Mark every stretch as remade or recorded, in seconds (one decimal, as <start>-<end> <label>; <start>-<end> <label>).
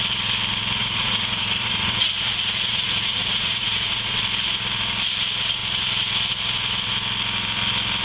0.0-0.8 recorded; 0.8-4.2 remade; 4.2-8.0 recorded